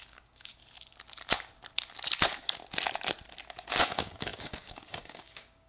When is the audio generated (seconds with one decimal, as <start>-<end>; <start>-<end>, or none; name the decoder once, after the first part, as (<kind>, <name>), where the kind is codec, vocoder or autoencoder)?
0.0-0.6 (codec, DAC); 3.8-5.7